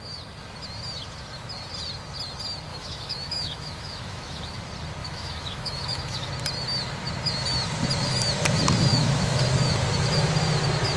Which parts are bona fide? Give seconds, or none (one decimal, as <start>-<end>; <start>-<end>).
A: 0.0-2.7; 4.6-5.0; 6.3-8.9; 9.4-11.0